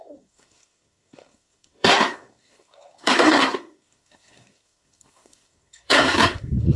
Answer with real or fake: fake